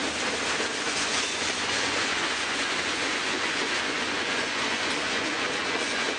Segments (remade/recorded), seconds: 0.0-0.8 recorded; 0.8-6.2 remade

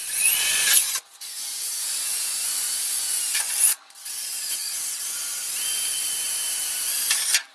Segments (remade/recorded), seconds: 0.0-3.9 remade; 3.9-7.5 recorded

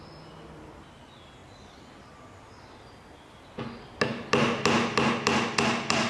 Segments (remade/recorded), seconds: 0.0-6.1 recorded

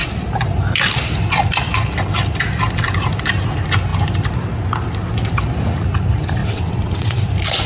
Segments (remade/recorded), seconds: 0.0-6.4 recorded; 6.4-7.2 remade; 7.2-7.7 recorded